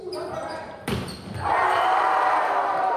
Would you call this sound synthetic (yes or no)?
yes